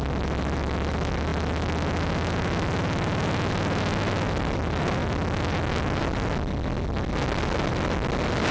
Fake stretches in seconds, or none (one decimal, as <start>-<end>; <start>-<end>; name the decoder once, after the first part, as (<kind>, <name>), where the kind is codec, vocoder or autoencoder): none